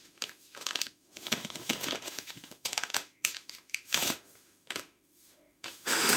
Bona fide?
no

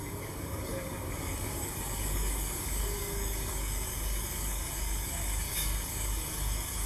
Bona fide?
no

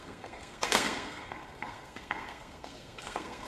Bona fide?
no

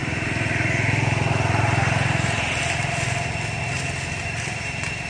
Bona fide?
yes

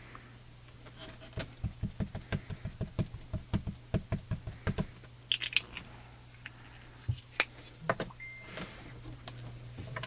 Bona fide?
yes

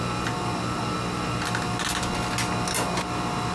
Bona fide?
yes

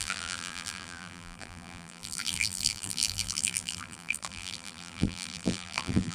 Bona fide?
no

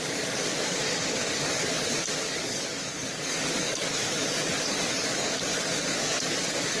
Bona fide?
no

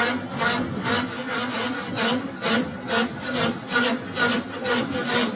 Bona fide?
yes